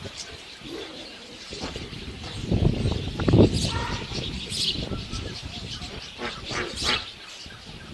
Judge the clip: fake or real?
fake